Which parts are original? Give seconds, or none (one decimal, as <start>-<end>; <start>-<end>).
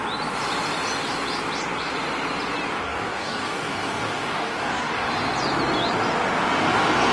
0.0-2.7; 5.1-7.1